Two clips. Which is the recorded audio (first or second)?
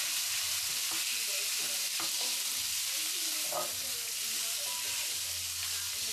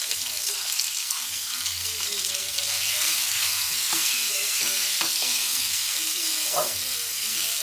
first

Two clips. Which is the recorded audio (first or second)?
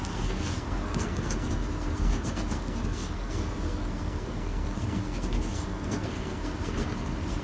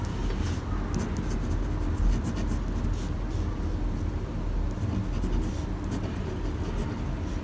second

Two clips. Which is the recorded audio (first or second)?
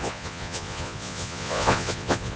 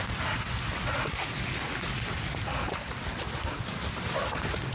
second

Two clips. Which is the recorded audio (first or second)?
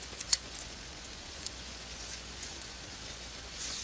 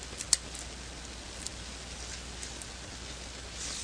second